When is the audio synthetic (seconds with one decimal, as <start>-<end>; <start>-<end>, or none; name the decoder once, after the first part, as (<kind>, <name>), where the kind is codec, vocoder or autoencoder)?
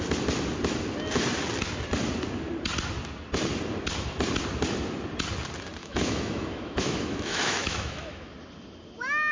5.8-8.3 (autoencoder, DAC-VAE)